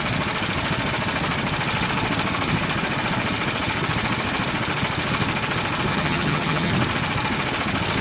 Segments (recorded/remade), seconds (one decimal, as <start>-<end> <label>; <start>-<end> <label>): 0.0-5.9 recorded; 5.9-6.7 remade; 6.7-8.0 recorded